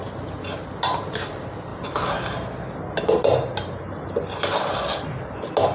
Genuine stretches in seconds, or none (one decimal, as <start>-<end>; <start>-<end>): 0.0-5.7